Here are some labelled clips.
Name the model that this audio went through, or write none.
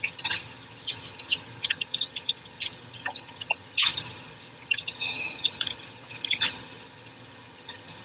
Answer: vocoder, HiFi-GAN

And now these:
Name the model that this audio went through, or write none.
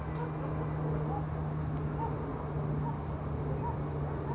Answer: none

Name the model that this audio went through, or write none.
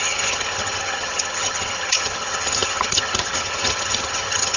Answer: vocoder, HiFi-GAN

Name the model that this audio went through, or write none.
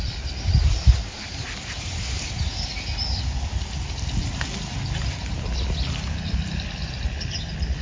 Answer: none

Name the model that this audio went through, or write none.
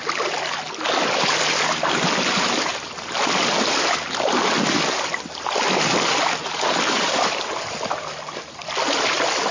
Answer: none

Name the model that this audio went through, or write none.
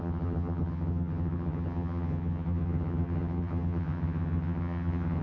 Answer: vocoder, HiFi-GAN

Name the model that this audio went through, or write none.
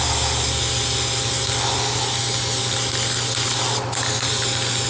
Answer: none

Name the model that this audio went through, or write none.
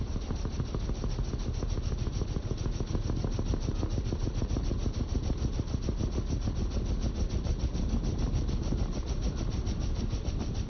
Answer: none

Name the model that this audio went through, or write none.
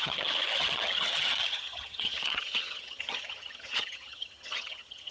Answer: vocoder, HiFi-GAN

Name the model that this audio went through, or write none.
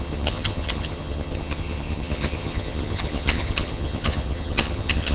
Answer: vocoder, HiFi-GAN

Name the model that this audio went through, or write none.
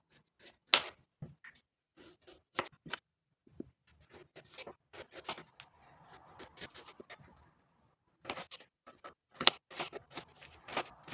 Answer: none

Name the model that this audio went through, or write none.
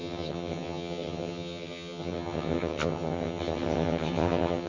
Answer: vocoder, HiFi-GAN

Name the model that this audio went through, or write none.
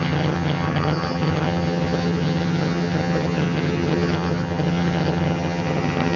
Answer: vocoder, HiFi-GAN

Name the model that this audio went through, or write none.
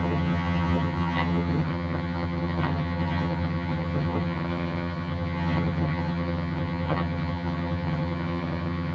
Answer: vocoder, HiFi-GAN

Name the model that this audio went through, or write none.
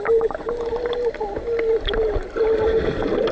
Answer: none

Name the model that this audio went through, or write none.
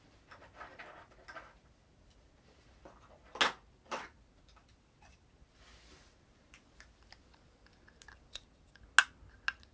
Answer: none